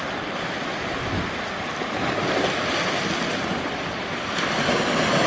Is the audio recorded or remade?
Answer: recorded